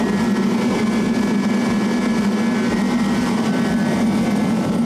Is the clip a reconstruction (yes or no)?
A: no